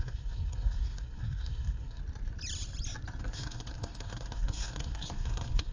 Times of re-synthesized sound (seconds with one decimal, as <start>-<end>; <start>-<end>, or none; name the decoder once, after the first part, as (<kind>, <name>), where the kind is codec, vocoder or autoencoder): 0.0-2.0 (codec, SNAC); 3.2-5.7